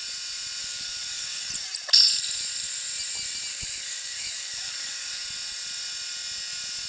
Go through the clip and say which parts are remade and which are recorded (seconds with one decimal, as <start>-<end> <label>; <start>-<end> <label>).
0.0-0.6 recorded; 0.6-1.5 remade; 1.5-3.5 recorded; 3.5-5.2 remade; 5.2-6.9 recorded